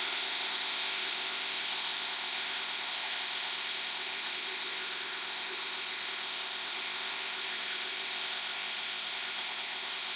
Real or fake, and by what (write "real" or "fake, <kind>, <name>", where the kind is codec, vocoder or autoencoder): fake, codec, ZipCodec